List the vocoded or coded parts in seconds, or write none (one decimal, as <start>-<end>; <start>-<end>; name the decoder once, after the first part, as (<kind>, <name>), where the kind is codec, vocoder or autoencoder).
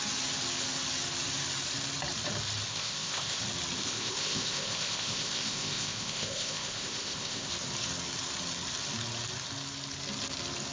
2.7-3.4 (codec, ZipCodec); 3.8-7.5